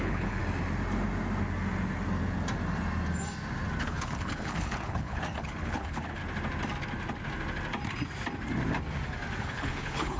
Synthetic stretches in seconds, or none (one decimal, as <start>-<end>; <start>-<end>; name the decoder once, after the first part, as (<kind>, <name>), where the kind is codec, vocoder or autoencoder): 0.0-0.4 (codec, HILCodec); 3.8-6.2; 9.4-10.2